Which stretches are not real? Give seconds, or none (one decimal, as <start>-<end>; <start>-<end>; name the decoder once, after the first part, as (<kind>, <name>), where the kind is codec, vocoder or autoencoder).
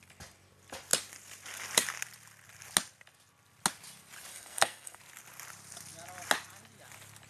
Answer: 4.3-5.0 (codec, SNAC)